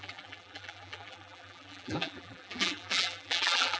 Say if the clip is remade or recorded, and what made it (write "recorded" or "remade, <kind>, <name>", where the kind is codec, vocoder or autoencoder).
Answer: remade, vocoder, BigVGAN v2